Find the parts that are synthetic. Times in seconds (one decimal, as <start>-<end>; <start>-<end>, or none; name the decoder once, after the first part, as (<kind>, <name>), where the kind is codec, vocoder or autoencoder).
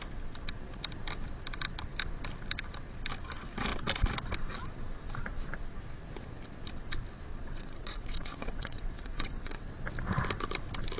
7.3-9.7 (vocoder, WaveNeXt)